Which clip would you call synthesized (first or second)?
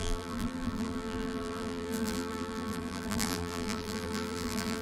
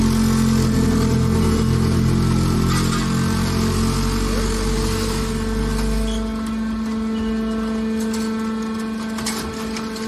first